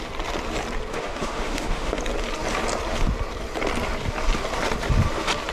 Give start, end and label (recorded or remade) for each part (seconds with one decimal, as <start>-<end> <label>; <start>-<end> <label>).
0.0-0.9 recorded; 0.9-2.0 remade; 2.0-5.5 recorded